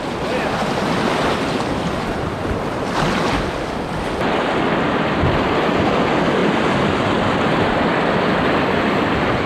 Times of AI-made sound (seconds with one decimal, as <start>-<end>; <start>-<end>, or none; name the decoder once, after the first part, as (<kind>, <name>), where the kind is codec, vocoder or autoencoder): none